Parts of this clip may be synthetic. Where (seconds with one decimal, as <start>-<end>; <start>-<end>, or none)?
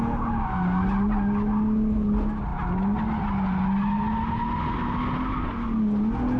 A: none